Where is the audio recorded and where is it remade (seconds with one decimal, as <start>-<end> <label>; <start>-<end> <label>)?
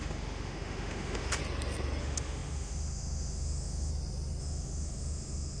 0.0-1.4 remade; 1.4-2.0 recorded; 2.0-3.9 remade; 3.9-4.4 recorded; 4.4-5.6 remade